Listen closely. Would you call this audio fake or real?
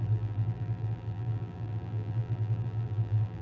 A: fake